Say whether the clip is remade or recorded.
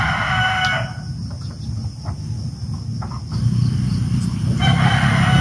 recorded